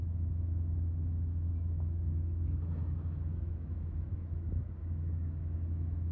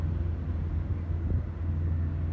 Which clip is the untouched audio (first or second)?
second